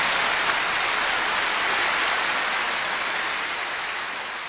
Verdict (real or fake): real